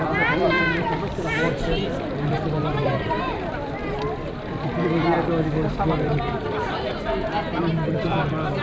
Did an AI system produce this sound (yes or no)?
yes